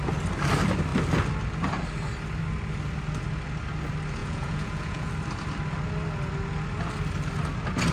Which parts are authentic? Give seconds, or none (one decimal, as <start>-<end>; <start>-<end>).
0.0-4.2; 5.1-7.9

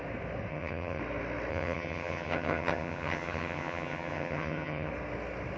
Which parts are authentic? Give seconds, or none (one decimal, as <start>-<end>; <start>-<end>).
0.0-0.5; 1.0-1.5; 4.9-5.6

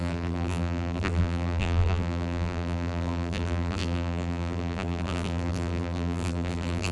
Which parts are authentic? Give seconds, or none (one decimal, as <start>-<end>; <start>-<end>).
none

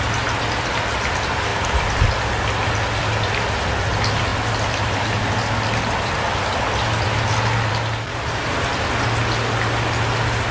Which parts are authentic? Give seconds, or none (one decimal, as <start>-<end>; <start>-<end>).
0.0-1.5; 2.0-10.5

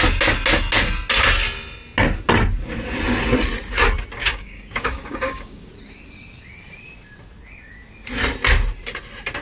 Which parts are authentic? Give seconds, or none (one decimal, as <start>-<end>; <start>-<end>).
0.0-4.2; 5.7-9.4

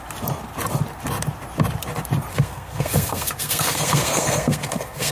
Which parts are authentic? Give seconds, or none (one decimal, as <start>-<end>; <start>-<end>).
0.0-2.3

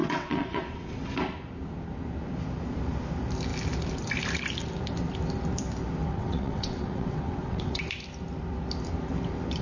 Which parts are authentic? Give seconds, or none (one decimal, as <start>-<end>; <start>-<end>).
1.0-6.1; 7.8-9.6

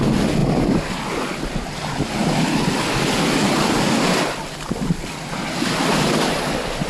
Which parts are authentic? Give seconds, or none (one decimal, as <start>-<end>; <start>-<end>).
0.0-6.9